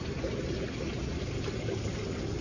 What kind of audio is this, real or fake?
real